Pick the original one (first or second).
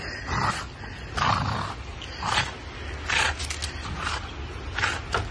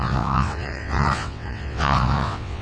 first